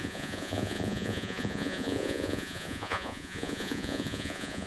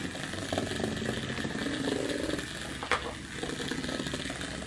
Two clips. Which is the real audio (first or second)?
second